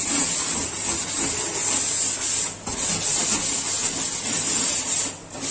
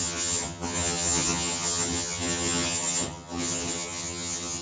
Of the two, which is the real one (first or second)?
first